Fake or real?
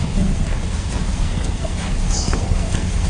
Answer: fake